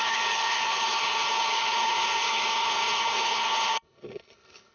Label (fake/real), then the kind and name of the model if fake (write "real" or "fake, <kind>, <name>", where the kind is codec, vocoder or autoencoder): fake, codec, HILCodec